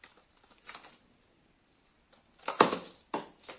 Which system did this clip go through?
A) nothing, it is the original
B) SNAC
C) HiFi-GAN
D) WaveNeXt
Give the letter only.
A